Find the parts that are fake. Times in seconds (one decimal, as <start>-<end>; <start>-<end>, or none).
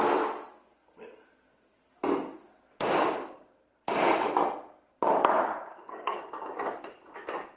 5.7-6.2